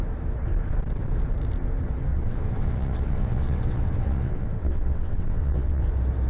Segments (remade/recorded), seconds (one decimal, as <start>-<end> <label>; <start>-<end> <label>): 0.0-2.1 recorded; 2.1-5.8 remade; 5.8-6.3 recorded